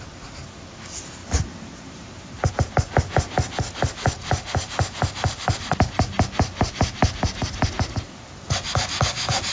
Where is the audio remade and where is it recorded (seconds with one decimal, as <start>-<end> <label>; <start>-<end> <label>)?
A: 0.0-9.5 recorded